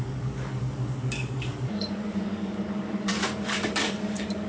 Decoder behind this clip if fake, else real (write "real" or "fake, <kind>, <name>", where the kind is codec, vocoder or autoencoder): fake, codec, DAC